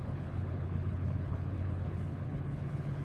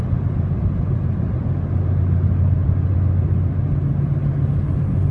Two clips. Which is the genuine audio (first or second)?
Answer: second